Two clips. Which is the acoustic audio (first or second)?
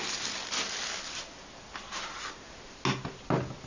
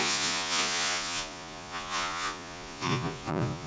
first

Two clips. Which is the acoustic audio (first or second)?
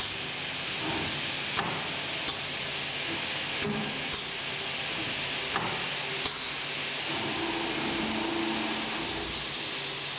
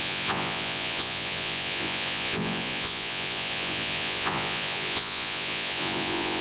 first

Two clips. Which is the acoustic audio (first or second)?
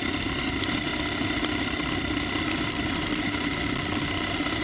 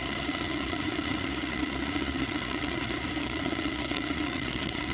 first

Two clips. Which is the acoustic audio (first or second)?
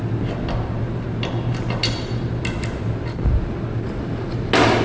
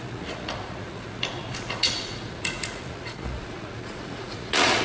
first